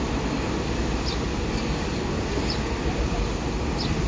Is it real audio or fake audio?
fake